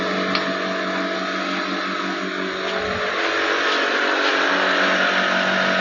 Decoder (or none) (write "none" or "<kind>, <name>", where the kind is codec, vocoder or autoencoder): none